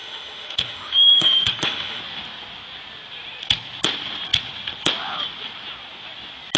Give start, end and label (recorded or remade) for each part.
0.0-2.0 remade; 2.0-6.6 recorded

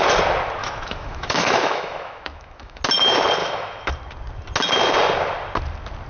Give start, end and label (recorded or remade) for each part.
0.0-0.6 recorded; 0.6-2.8 remade; 2.8-3.4 recorded; 3.4-3.9 remade; 3.9-6.1 recorded

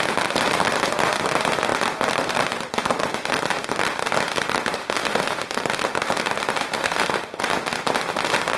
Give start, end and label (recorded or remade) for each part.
0.0-4.8 recorded; 4.8-5.4 remade; 5.4-6.8 recorded; 6.8-7.4 remade; 7.4-8.6 recorded